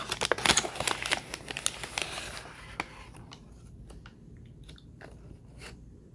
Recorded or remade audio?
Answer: recorded